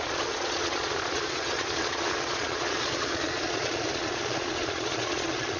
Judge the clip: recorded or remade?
remade